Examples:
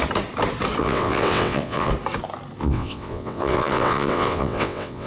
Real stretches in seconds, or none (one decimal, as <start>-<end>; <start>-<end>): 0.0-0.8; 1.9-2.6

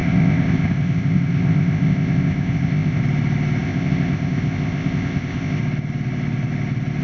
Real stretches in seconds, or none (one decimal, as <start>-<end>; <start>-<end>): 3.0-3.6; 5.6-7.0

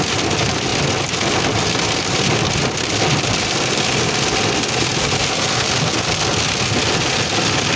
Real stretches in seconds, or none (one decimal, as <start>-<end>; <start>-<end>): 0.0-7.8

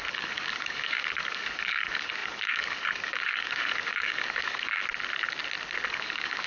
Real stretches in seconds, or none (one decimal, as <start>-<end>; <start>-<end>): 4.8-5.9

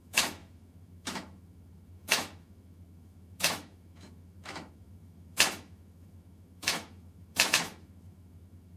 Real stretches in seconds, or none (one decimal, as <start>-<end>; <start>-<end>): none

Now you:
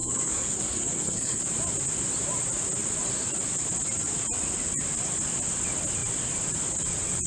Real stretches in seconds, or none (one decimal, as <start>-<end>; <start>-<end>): 1.4-7.3